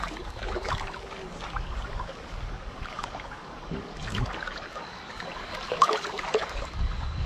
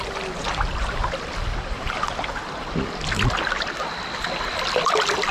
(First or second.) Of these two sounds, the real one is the second